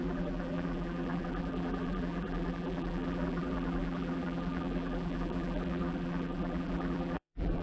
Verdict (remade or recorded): remade